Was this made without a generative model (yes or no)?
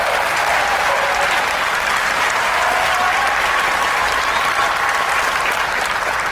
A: no